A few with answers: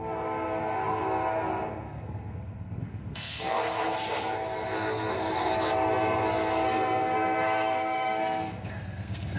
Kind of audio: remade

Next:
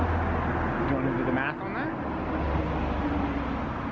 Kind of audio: recorded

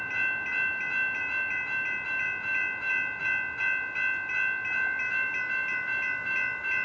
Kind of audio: recorded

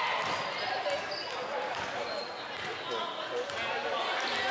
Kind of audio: recorded